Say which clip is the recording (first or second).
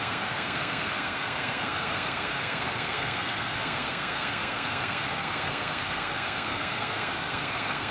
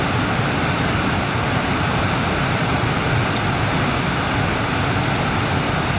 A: second